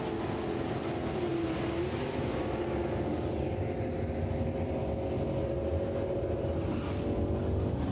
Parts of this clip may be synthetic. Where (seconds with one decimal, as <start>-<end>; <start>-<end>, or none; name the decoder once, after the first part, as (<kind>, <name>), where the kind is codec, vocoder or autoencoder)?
none